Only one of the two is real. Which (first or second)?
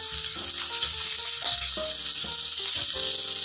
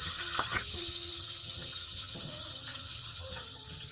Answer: first